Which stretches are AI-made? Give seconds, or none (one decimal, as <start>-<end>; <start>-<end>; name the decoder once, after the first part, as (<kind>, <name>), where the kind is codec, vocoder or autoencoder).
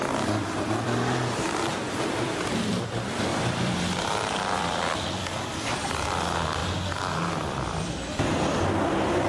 0.0-9.3 (vocoder, BigVGAN v2)